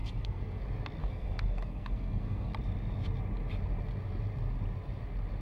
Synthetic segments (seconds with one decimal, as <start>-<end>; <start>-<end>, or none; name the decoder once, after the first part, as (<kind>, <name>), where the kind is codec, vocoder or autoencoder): 0.0-0.6 (codec, SNAC); 1.0-2.5